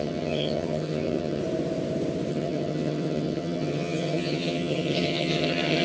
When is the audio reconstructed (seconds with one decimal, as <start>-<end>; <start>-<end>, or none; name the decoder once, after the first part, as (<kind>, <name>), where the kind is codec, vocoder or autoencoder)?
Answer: 0.0-1.4 (vocoder, HiFi-GAN); 2.3-5.8